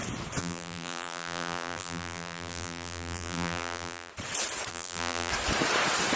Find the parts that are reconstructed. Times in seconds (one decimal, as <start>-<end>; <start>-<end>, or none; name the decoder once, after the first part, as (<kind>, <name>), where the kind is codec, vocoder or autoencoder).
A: 0.4-4.1 (vocoder, BigVGAN v2); 4.7-5.3